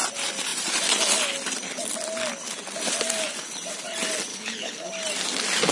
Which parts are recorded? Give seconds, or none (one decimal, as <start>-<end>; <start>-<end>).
0.0-4.3; 4.9-5.7